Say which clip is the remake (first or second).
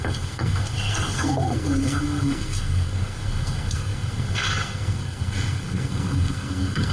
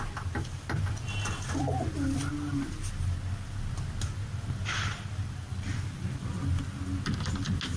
first